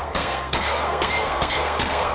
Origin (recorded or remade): remade